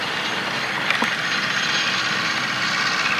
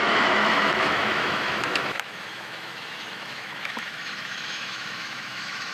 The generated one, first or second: second